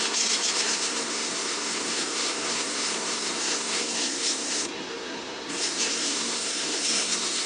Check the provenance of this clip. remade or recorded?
remade